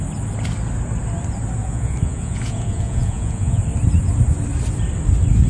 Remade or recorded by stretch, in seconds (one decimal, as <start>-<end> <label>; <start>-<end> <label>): 0.0-1.6 recorded; 1.6-3.6 remade; 3.6-5.5 recorded